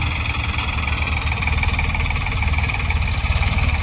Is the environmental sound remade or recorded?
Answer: recorded